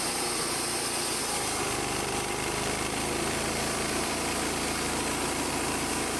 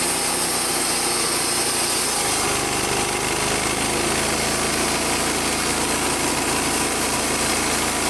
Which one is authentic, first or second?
second